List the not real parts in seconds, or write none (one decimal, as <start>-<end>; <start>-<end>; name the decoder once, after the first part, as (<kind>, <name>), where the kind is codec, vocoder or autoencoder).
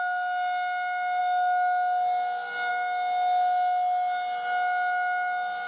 none